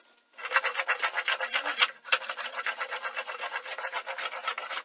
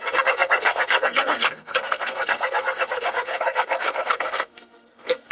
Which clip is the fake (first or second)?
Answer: second